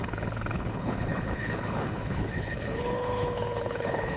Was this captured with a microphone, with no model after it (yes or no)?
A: no